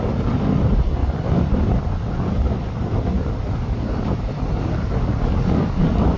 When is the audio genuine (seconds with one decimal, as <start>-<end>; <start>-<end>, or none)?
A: 0.0-6.2